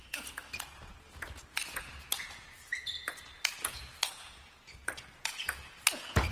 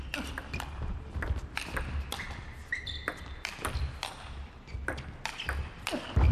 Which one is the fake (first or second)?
first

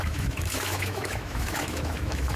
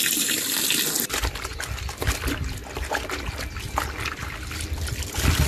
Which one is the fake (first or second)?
first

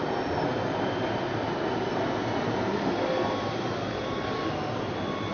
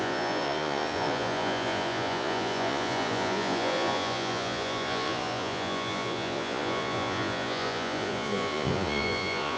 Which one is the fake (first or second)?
second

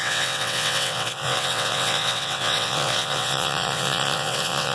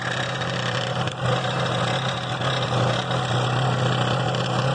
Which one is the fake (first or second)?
first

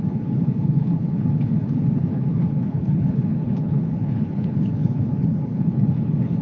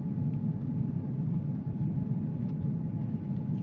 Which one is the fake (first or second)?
first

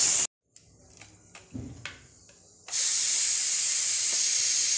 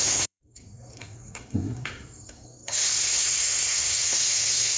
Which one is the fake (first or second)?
second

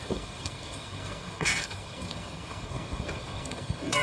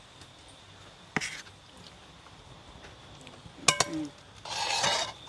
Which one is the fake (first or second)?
first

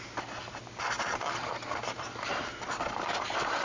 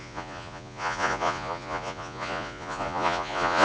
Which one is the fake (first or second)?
second